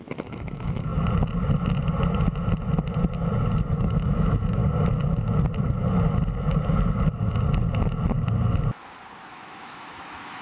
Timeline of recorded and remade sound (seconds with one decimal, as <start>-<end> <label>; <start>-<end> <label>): 0.0-0.9 remade; 0.9-3.7 recorded; 3.7-4.6 remade; 4.6-9.3 recorded; 9.3-10.4 remade